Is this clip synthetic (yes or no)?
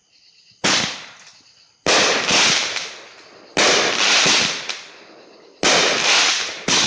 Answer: no